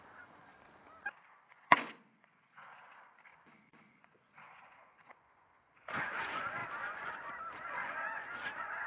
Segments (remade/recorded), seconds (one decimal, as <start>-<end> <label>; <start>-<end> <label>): 0.0-0.5 remade; 0.5-1.3 recorded; 1.3-8.9 remade